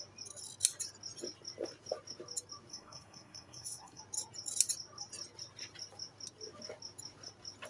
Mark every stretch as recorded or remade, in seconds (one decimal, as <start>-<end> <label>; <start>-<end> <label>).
0.0-2.7 recorded; 2.7-4.0 remade; 4.0-7.7 recorded